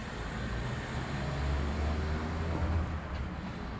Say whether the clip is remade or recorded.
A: recorded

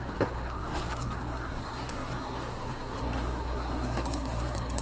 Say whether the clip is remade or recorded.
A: remade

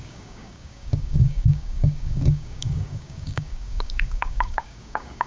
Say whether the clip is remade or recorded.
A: remade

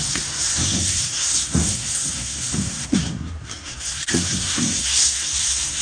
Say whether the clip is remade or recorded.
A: remade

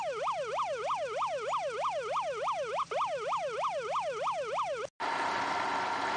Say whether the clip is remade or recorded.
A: recorded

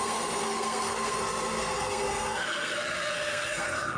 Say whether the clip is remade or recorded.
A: remade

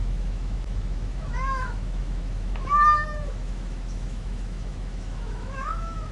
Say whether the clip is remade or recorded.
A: remade